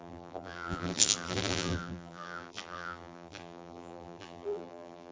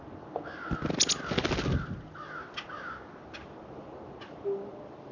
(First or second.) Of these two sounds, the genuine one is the second